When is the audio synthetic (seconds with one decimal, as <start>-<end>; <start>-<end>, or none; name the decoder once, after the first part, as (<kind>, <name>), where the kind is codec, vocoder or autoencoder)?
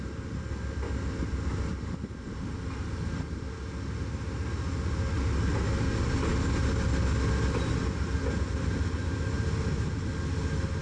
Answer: none